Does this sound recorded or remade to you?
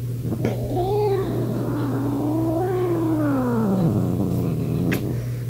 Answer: recorded